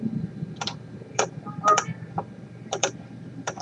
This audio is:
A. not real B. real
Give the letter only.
A